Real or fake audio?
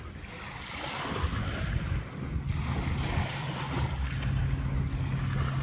real